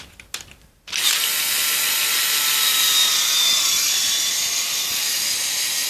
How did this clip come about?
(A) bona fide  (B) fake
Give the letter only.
A